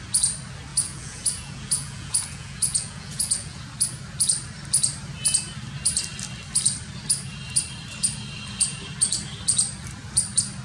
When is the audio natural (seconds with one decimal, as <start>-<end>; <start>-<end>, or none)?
0.0-0.7; 3.6-10.6